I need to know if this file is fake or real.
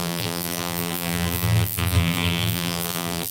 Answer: fake